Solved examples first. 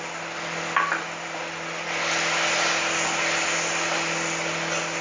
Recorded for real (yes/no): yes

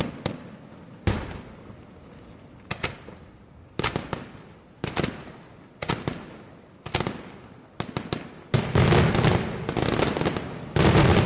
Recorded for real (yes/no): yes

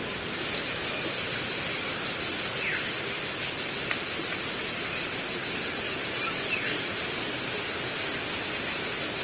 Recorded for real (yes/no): yes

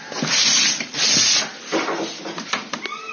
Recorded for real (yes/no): yes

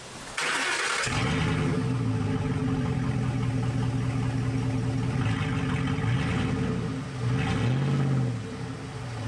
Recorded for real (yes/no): yes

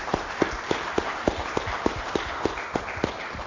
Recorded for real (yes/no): yes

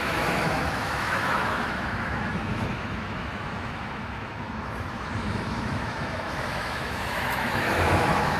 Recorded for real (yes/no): no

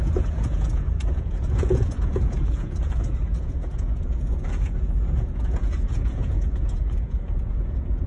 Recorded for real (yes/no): no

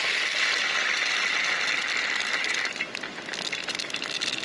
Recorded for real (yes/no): yes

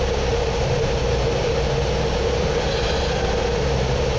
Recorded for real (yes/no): no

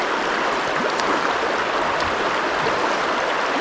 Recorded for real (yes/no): yes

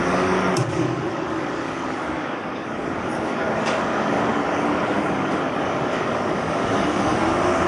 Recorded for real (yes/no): no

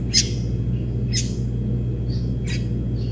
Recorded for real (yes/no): yes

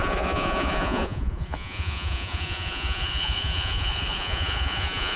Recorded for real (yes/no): no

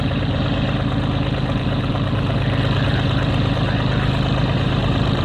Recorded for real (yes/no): yes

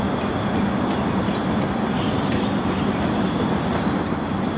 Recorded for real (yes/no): yes